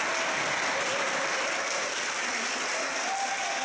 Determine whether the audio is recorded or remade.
recorded